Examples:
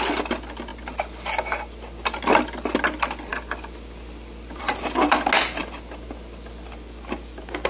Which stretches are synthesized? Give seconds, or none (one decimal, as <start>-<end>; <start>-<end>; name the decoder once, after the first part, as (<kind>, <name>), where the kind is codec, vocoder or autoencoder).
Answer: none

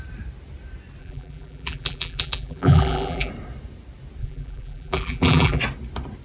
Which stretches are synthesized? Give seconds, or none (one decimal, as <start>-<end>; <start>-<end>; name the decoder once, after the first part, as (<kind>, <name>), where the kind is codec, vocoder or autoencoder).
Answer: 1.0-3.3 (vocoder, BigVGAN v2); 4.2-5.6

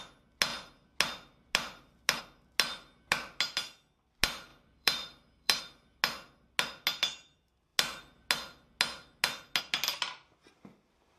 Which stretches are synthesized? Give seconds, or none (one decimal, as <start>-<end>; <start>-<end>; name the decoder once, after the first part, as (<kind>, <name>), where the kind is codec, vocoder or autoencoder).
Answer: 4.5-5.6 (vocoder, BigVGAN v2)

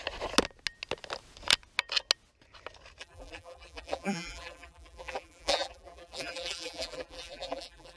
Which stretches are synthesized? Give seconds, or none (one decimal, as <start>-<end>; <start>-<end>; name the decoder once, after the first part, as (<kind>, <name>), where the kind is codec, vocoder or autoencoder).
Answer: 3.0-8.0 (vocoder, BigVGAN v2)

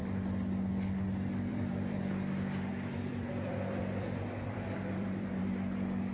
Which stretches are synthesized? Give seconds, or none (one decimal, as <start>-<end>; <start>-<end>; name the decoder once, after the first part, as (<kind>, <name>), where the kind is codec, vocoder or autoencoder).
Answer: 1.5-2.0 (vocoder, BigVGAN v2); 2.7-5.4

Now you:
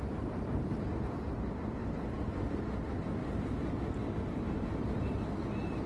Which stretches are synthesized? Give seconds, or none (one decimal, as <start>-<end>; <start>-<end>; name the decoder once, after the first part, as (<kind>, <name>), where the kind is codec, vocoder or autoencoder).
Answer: 0.0-1.8 (vocoder, BigVGAN v2); 2.6-3.2; 4.2-5.9

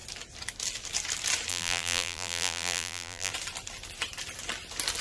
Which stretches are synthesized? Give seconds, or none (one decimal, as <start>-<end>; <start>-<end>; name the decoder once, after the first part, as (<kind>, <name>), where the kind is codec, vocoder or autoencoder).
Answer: 1.5-3.3 (vocoder, BigVGAN v2)

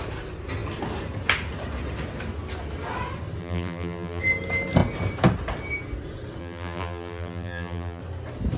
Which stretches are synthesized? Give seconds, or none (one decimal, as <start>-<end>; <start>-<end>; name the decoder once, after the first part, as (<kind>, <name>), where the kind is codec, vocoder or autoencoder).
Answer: 3.4-4.2 (vocoder, BigVGAN v2); 6.4-8.0